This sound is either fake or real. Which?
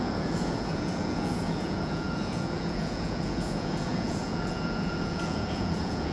fake